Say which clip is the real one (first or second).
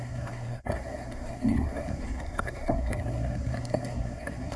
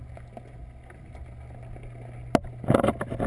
second